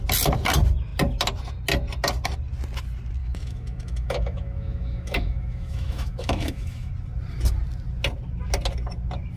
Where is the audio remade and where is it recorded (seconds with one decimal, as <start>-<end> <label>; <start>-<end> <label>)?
0.0-3.2 recorded; 3.2-6.9 remade; 6.9-9.4 recorded